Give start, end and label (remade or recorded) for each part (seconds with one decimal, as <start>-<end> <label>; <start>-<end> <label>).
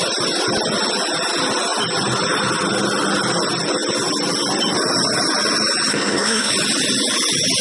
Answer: 0.0-5.9 recorded; 5.9-6.5 remade; 6.5-7.6 recorded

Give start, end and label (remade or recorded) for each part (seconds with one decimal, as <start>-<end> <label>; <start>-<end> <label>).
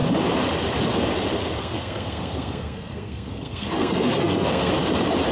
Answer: 0.0-1.6 recorded; 1.6-4.7 remade; 4.7-5.3 recorded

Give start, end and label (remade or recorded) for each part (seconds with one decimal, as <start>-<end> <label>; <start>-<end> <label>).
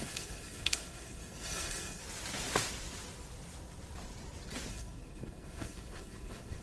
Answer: 0.0-2.0 remade; 2.0-4.7 recorded; 4.7-6.6 remade